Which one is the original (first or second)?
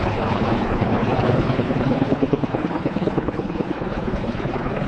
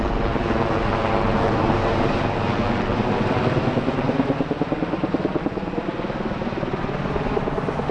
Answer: second